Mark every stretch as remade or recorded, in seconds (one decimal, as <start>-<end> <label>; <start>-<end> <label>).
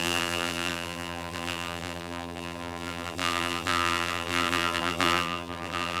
0.0-6.0 remade